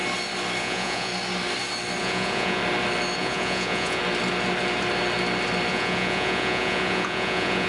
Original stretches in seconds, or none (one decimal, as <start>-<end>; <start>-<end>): 0.0-0.6; 1.1-2.0; 2.6-3.2; 4.0-5.7